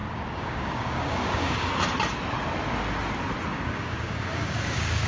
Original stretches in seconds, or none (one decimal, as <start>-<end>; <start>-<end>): 1.7-3.5